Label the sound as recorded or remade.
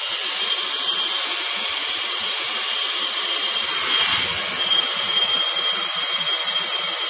recorded